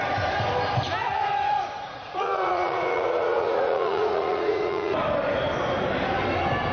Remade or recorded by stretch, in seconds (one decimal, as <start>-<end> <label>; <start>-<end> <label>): 0.0-1.0 recorded; 1.0-5.0 remade; 5.0-6.7 recorded

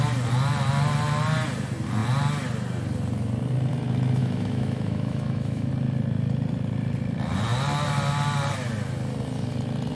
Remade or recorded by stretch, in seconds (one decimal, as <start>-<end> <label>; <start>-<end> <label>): 0.0-4.2 recorded; 4.2-5.7 remade; 5.7-9.9 recorded

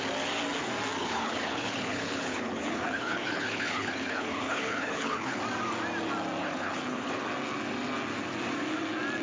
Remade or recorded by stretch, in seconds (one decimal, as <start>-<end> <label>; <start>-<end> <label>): 0.0-1.0 recorded; 1.0-5.4 remade; 5.4-6.4 recorded; 6.4-7.2 remade; 7.2-9.2 recorded

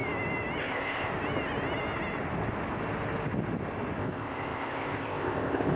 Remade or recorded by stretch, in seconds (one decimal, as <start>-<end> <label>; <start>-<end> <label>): 0.0-0.6 recorded; 0.6-1.1 remade; 1.1-4.0 recorded; 4.0-5.8 remade